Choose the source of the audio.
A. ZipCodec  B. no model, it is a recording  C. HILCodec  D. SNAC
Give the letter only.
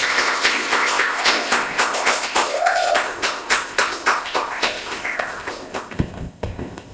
A